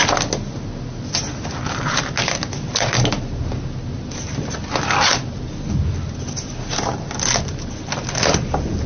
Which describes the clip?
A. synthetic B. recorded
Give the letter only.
B